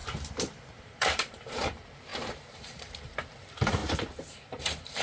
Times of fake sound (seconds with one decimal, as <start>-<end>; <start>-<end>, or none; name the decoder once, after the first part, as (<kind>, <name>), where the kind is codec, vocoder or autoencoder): 0.8-5.0 (vocoder, BigVGAN v2)